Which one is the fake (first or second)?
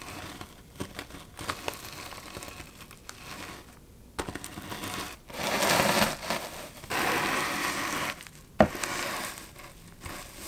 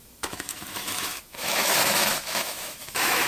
second